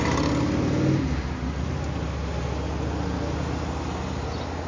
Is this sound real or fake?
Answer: real